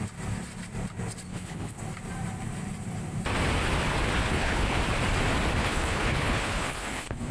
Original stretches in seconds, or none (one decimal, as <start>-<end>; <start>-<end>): 0.0-1.3; 1.8-4.2; 4.8-5.6